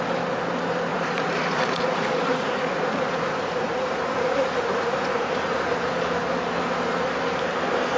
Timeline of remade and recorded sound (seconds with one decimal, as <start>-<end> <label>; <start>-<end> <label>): 0.0-0.9 recorded; 0.9-5.7 remade; 5.7-8.0 recorded